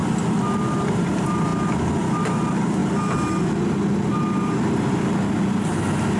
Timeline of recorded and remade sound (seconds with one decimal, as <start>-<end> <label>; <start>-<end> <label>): 0.0-1.0 recorded; 1.0-1.5 remade; 1.5-2.2 recorded; 2.2-2.8 remade; 2.8-6.2 recorded